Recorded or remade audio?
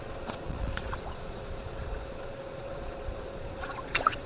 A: remade